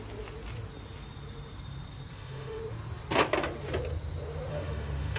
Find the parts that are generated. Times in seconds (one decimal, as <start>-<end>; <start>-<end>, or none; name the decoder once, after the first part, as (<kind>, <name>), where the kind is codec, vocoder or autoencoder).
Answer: 2.1-2.6 (autoencoder, DAC-VAE); 4.5-5.2